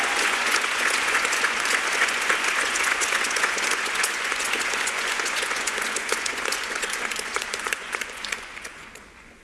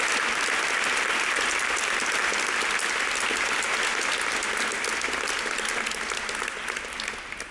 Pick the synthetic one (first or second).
first